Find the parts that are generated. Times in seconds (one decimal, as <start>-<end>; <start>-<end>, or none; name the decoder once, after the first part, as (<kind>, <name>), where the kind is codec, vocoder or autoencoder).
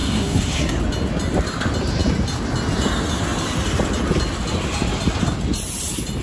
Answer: 0.0-0.8 (codec, SNAC)